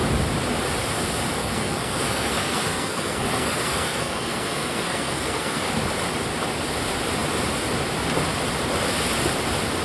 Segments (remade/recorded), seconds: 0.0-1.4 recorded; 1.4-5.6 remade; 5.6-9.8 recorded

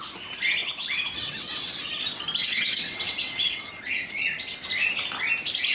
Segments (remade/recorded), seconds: 0.0-0.6 recorded; 0.6-1.7 remade; 1.7-2.4 recorded; 2.4-3.7 remade; 3.7-5.7 recorded

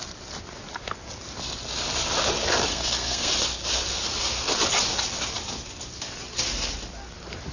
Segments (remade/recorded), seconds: 0.0-2.7 recorded; 2.7-3.3 remade; 3.3-7.5 recorded